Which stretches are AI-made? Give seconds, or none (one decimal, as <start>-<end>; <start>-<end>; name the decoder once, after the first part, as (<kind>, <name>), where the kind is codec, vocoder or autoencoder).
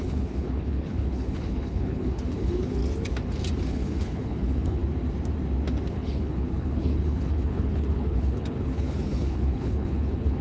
0.0-2.8 (codec, HILCodec); 3.7-4.8; 5.9-10.4